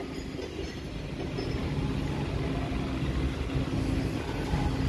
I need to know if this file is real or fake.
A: real